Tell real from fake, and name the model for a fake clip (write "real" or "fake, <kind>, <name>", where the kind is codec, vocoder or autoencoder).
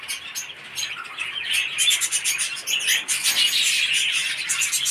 real